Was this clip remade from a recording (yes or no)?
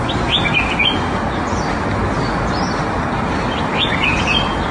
no